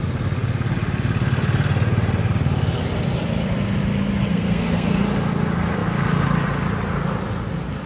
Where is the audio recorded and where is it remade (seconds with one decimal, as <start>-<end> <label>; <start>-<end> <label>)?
0.0-4.3 recorded; 4.3-5.0 remade; 5.0-7.9 recorded